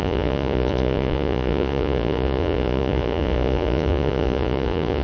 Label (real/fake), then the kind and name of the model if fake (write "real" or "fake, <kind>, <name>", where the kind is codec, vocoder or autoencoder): fake, vocoder, Vocos